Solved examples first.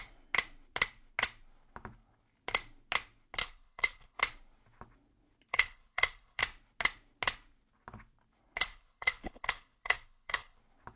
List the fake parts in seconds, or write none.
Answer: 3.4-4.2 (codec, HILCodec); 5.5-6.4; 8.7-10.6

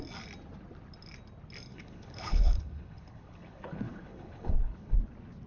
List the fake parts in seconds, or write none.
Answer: 1.7-5.0 (codec, HILCodec)

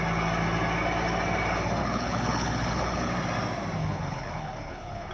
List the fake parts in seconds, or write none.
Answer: 1.8-3.1 (codec, HILCodec); 3.8-5.1

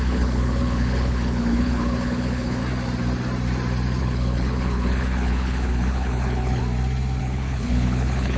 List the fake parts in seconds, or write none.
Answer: 0.0-2.6 (codec, HILCodec); 4.0-6.6; 7.2-8.4

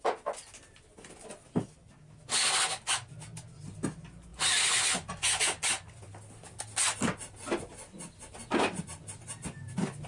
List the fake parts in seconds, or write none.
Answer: none

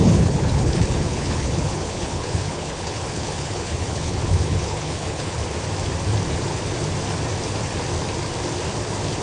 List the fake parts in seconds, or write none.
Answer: 0.0-5.4 (codec, HILCodec)

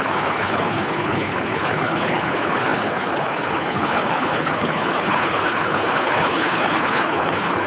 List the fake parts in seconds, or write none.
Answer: 0.0-7.7 (codec, HILCodec)